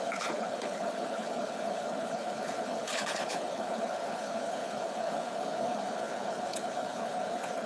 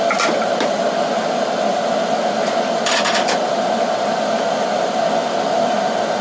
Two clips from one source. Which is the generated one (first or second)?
first